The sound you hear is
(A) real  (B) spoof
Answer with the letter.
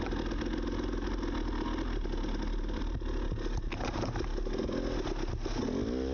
A